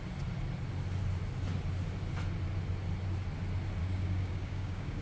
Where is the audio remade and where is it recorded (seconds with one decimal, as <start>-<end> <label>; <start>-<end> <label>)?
0.0-3.8 recorded; 3.8-5.0 remade